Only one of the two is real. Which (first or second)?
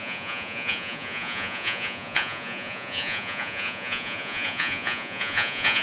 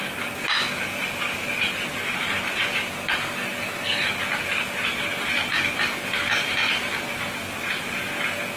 second